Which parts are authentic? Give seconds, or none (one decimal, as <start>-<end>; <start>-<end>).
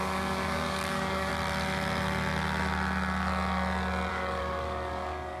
1.3-4.1